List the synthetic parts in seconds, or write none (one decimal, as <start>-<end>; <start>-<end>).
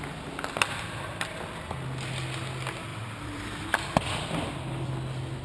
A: 2.9-3.7